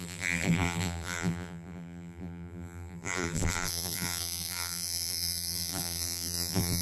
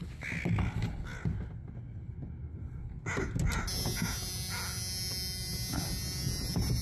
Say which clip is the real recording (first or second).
second